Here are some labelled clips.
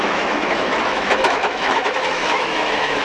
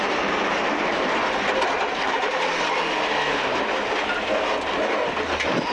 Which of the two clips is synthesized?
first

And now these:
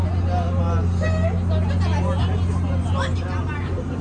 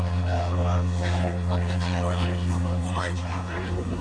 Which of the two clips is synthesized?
second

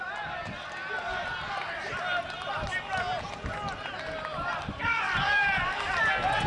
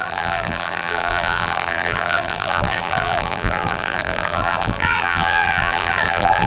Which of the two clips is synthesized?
second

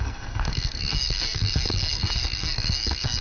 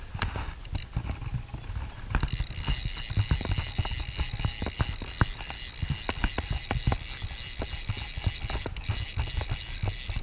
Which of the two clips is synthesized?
first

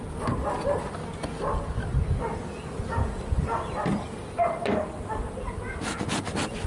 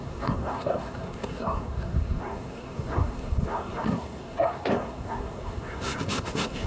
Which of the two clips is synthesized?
second